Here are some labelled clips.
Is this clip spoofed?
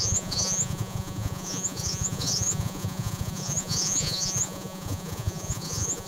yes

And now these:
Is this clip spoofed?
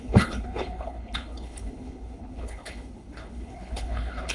yes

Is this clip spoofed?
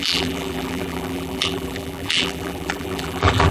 yes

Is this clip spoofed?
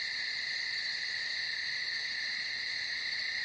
no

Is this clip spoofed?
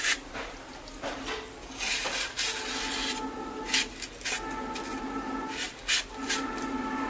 no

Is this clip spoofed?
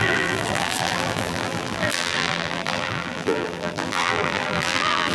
yes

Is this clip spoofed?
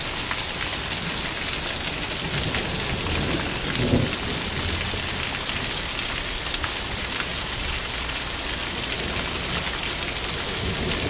no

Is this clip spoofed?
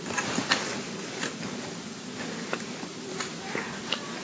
no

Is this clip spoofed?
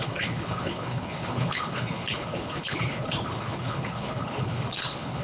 yes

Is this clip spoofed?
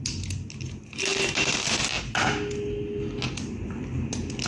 no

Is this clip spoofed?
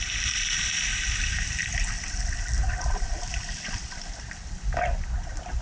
no